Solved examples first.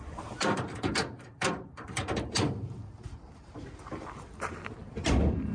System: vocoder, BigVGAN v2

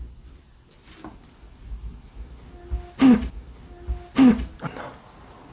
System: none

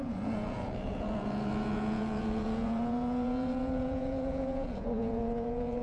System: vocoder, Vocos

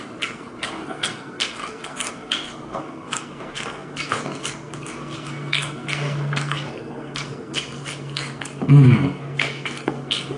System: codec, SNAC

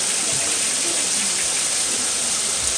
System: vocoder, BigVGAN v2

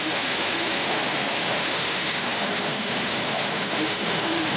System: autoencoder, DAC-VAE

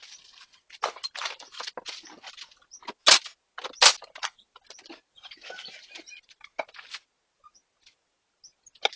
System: none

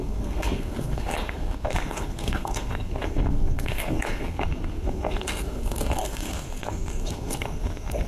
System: codec, SNAC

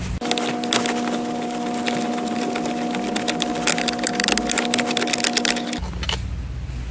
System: none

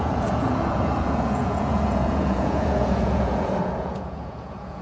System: vocoder, Vocos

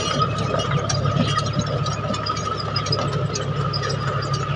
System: none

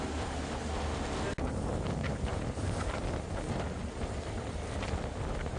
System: none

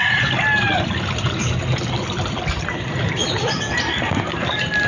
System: none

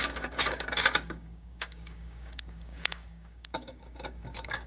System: codec, DAC